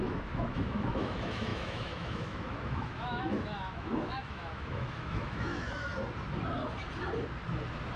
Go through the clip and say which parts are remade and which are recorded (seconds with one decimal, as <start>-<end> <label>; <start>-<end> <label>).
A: 0.0-5.9 remade; 5.9-8.0 recorded